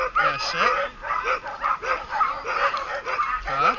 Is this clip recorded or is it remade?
recorded